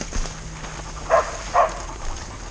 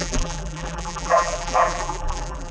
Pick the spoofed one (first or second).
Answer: second